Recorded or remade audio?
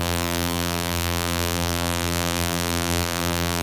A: remade